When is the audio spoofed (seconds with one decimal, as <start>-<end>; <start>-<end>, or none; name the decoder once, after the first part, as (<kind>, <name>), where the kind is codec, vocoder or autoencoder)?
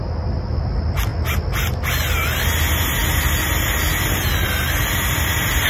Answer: none